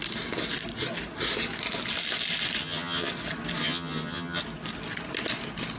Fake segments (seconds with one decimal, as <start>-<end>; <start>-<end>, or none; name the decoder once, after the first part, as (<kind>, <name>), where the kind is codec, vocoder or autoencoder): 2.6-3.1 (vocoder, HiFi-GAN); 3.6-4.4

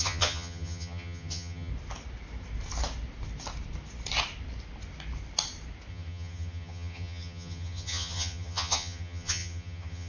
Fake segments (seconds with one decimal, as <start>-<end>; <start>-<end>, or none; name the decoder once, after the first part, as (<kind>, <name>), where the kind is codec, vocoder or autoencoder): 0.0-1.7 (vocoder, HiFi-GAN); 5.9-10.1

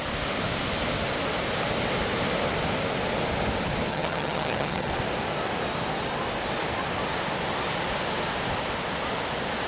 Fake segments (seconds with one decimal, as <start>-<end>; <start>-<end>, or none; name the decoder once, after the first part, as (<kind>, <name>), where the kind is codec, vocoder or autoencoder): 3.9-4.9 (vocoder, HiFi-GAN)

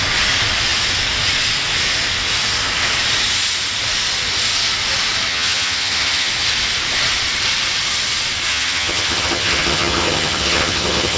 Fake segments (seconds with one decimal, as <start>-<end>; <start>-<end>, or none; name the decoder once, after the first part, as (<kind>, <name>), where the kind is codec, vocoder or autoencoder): 5.3-6.3 (vocoder, HiFi-GAN); 8.5-11.2

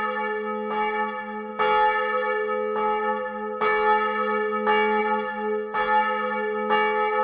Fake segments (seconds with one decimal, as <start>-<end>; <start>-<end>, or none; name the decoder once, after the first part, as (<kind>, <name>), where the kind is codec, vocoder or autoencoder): none

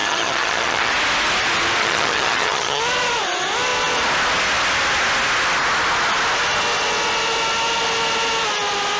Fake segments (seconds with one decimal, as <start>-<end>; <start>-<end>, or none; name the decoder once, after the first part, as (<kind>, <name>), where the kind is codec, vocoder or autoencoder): 0.0-0.9 (vocoder, HiFi-GAN); 1.8-2.8

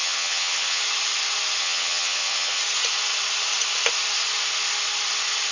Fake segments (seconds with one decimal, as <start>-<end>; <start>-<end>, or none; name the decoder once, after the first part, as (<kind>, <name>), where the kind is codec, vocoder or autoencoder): 0.0-0.8 (vocoder, HiFi-GAN); 1.6-2.6